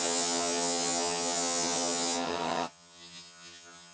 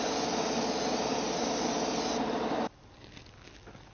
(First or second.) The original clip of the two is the second